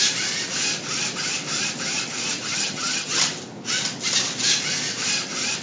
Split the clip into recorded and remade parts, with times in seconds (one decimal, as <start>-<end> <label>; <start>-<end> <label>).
0.0-2.5 recorded; 2.5-3.2 remade; 3.2-5.6 recorded